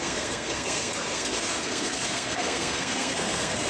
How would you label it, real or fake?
fake